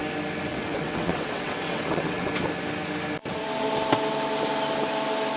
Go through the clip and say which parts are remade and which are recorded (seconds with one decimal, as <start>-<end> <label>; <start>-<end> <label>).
0.0-0.5 recorded; 0.5-2.3 remade; 2.3-5.4 recorded